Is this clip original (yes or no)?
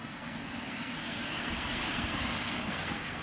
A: no